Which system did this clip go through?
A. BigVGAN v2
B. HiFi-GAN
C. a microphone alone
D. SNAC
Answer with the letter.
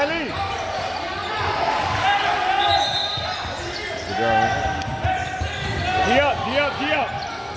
C